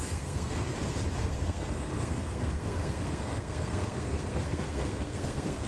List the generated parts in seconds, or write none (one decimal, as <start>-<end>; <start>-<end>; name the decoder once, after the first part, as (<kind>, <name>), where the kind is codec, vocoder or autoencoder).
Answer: 0.0-0.7 (codec, SNAC); 1.2-5.7